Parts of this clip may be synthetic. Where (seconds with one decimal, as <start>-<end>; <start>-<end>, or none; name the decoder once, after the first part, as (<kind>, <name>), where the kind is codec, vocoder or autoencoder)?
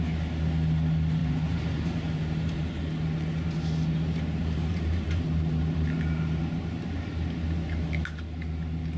1.2-2.7 (vocoder, BigVGAN v2); 4.4-6.4